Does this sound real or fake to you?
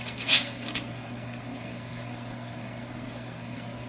fake